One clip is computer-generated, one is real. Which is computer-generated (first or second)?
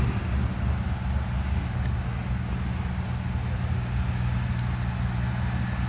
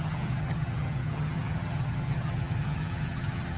second